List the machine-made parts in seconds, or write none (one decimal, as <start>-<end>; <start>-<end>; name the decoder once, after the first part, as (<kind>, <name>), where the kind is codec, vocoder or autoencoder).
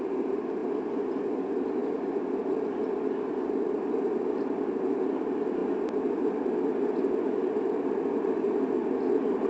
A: none